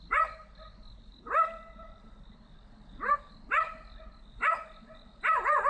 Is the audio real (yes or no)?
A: yes